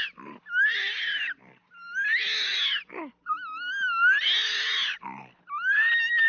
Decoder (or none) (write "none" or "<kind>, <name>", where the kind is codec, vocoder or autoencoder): none